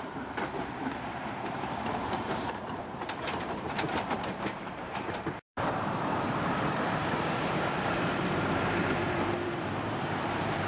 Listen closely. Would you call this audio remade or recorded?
remade